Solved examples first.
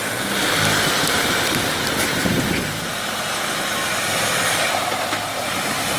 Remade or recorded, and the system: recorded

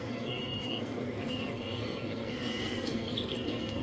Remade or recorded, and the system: remade, codec, SNAC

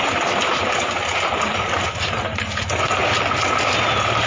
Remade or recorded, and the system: recorded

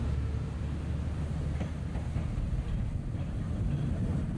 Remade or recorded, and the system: recorded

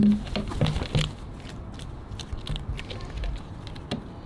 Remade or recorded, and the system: recorded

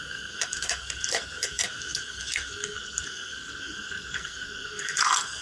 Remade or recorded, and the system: remade, codec, SNAC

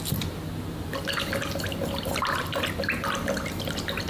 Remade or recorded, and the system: recorded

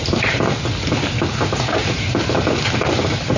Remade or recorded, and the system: recorded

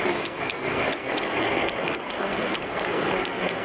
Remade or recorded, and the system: remade, codec, SNAC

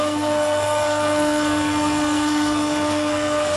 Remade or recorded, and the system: remade, codec, SNAC